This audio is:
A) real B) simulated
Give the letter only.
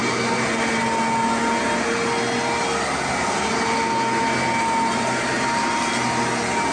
A